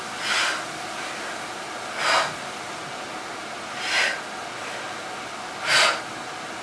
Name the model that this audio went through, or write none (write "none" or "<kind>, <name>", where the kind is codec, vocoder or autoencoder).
none